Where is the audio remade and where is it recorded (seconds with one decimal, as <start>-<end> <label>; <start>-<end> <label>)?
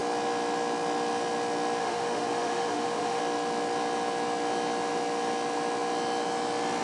0.0-1.8 recorded; 1.8-3.2 remade; 3.2-6.8 recorded